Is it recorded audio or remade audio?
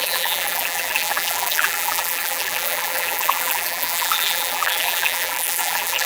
remade